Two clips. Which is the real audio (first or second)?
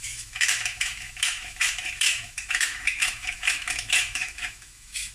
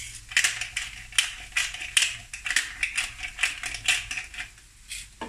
second